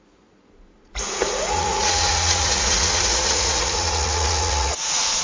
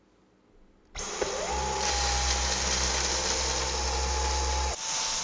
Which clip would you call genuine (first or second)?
second